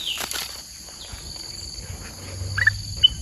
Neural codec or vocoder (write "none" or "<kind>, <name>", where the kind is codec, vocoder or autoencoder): none